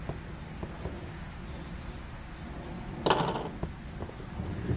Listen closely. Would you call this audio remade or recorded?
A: recorded